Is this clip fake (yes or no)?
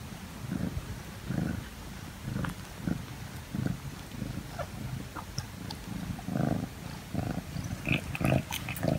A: no